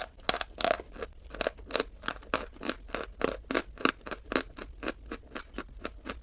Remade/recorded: recorded